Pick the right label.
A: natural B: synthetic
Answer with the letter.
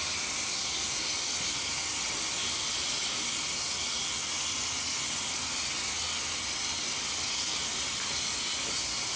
A